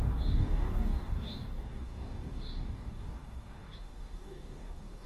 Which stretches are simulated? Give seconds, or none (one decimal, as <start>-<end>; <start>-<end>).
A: 0.0-5.1